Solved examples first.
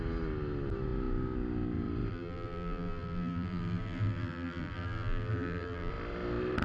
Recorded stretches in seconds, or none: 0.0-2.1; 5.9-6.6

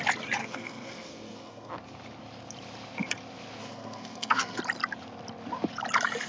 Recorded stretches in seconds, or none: 0.0-0.4; 1.7-3.6; 4.6-6.3

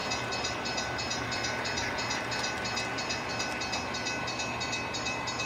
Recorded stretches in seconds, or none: 0.0-5.5

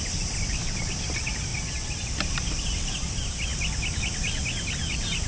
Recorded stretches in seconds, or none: 1.5-2.3; 3.5-4.0

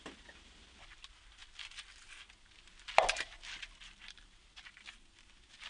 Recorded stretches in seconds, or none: 0.0-5.7

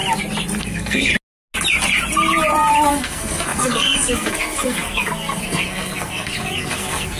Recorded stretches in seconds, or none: 0.0-0.6; 1.1-2.9